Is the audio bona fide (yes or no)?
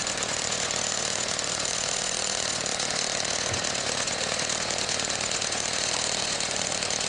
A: no